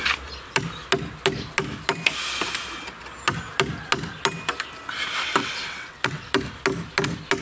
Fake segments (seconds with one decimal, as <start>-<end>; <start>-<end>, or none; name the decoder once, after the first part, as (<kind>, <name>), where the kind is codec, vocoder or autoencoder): 5.4-6.3 (vocoder, WaveNeXt)